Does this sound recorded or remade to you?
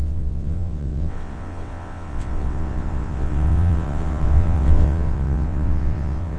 remade